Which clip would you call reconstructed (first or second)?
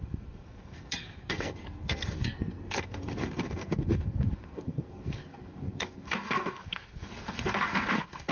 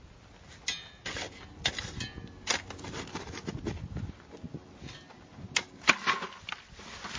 first